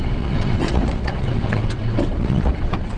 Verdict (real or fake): fake